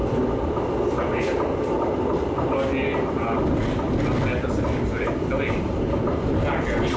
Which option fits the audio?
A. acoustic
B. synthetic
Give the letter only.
A